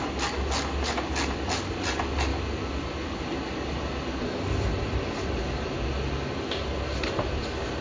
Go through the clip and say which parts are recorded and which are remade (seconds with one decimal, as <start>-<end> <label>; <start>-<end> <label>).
0.0-7.8 recorded